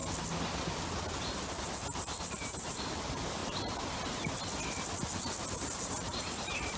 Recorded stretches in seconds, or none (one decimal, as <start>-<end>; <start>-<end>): 0.0-2.3; 3.4-5.5